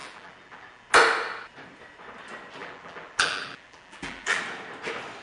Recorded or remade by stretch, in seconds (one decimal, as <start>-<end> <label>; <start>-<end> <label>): 0.0-0.8 remade; 0.8-2.6 recorded; 2.6-4.4 remade; 4.4-5.2 recorded